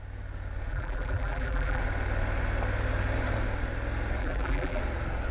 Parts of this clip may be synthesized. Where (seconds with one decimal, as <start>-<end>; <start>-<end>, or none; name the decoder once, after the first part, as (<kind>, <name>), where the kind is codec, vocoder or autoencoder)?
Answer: 0.7-1.8 (vocoder, BigVGAN v2); 4.2-4.8

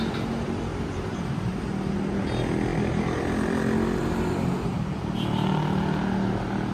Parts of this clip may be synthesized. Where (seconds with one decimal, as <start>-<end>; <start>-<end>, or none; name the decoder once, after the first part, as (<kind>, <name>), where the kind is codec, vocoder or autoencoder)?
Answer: 0.7-1.6 (vocoder, BigVGAN v2); 2.7-3.2; 4.0-4.7

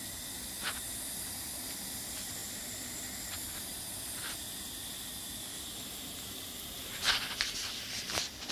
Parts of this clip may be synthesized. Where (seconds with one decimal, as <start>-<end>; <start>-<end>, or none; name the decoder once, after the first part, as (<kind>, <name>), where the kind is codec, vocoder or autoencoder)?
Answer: none

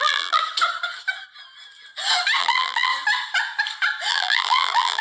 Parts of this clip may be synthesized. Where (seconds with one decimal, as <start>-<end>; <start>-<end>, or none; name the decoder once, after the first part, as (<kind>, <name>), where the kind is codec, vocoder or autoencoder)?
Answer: 0.0-0.4 (vocoder, BigVGAN v2); 2.4-2.9; 4.1-5.0

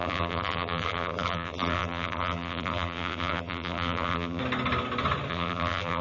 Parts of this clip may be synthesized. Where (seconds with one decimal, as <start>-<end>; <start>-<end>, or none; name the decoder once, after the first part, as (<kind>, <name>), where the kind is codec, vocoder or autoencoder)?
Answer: 0.0-4.4 (vocoder, BigVGAN v2); 5.3-6.0

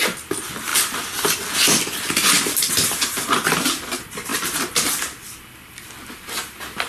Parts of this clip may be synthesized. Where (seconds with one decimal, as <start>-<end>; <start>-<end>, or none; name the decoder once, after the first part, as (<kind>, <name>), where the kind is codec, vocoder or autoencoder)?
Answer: none

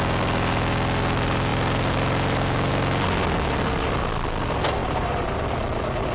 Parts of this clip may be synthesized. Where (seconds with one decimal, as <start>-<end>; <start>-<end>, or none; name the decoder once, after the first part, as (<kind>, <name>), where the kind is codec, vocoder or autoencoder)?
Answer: 4.8-5.4 (vocoder, BigVGAN v2)

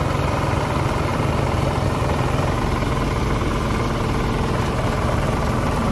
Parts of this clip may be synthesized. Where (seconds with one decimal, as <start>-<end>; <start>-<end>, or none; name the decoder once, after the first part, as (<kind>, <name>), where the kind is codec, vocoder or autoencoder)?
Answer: none